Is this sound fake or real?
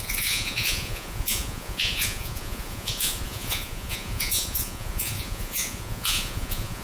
fake